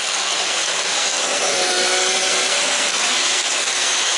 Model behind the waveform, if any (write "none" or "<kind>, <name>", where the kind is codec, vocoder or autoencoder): codec, SNAC